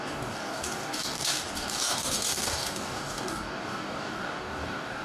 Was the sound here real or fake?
fake